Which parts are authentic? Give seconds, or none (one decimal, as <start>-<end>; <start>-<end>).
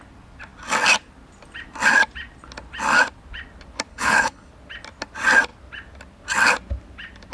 0.0-3.9; 4.5-7.3